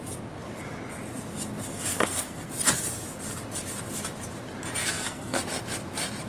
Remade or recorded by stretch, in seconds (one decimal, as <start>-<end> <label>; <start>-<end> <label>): 0.0-1.9 recorded; 1.9-2.5 remade; 2.5-4.8 recorded; 4.8-5.4 remade; 5.4-6.3 recorded